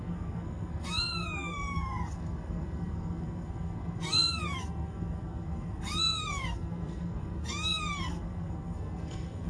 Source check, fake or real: fake